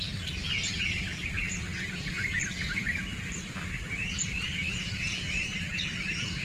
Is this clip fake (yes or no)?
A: no